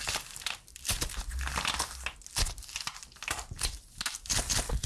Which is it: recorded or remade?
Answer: recorded